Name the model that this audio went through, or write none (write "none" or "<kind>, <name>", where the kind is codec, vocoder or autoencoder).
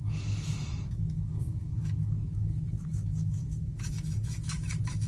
autoencoder, DAC-VAE